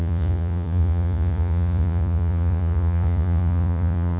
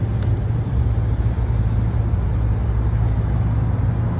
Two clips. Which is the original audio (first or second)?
second